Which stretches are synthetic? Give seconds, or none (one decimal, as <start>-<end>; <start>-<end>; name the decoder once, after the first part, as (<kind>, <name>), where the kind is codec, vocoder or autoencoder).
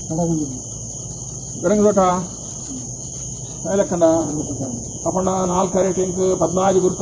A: 4.2-7.0 (vocoder, Vocos)